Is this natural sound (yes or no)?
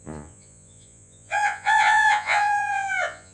no